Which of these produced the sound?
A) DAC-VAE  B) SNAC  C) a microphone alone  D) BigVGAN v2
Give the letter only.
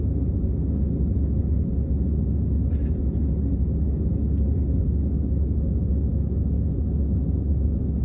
C